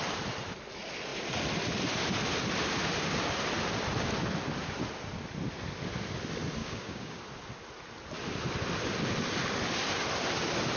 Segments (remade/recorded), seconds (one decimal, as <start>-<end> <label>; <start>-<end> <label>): 0.0-6.6 recorded; 6.6-7.2 remade; 7.2-10.8 recorded